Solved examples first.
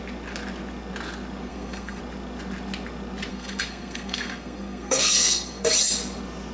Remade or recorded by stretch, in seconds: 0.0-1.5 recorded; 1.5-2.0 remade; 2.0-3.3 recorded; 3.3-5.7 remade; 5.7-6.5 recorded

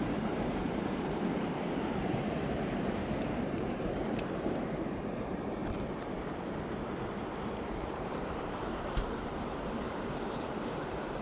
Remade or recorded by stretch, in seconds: 0.0-5.6 remade; 5.6-7.9 recorded; 7.9-11.2 remade

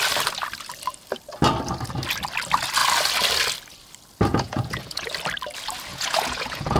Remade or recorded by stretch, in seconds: 0.0-4.3 recorded; 4.3-5.1 remade; 5.1-5.9 recorded; 5.9-6.8 remade

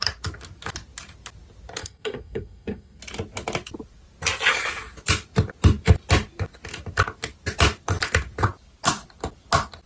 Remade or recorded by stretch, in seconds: 0.0-1.8 recorded; 1.8-3.0 remade; 3.0-9.9 recorded

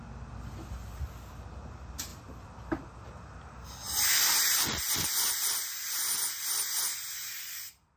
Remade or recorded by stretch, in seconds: 0.0-6.9 recorded; 6.9-8.0 remade

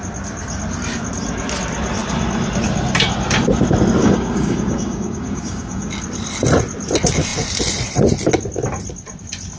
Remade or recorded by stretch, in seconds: 0.0-4.0 recorded; 4.0-5.9 remade; 5.9-9.6 recorded